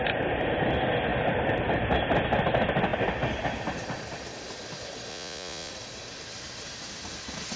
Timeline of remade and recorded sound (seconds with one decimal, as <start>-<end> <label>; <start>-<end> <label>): 0.0-5.1 recorded; 5.1-5.7 remade; 5.7-7.6 recorded